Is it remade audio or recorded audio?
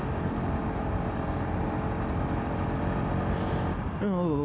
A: recorded